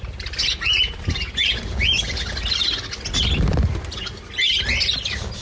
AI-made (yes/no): no